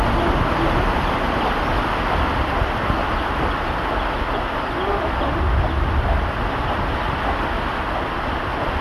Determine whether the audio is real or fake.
real